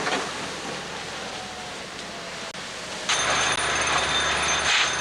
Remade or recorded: recorded